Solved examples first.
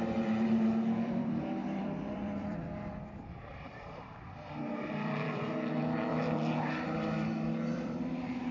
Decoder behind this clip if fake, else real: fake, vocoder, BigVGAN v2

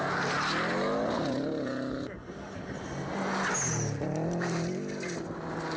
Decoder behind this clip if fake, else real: real